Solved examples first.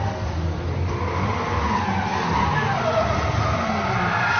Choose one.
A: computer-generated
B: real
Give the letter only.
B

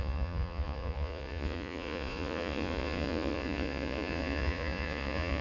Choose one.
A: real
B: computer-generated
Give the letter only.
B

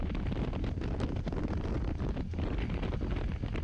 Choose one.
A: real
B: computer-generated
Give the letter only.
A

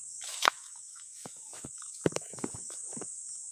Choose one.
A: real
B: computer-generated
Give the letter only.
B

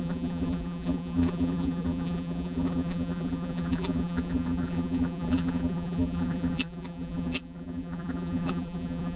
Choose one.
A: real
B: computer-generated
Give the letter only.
B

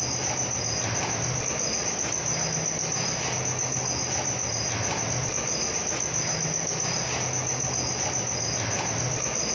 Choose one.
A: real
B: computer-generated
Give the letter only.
A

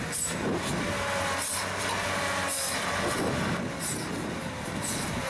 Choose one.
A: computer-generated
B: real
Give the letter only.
B